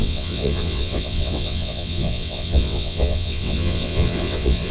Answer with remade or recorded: remade